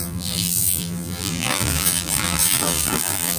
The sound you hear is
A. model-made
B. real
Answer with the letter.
A